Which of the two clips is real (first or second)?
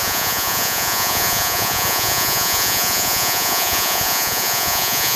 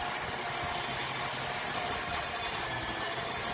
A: second